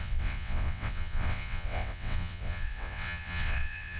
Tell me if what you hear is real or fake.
fake